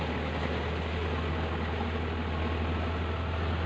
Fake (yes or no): no